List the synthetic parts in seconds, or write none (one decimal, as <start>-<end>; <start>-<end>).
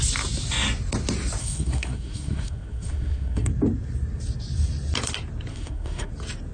1.4-3.5; 5.5-6.1